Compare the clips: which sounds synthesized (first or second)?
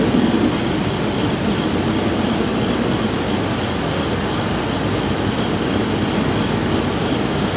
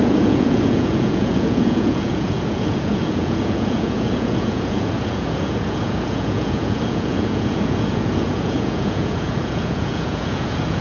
second